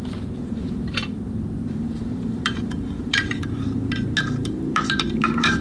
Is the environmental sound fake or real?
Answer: fake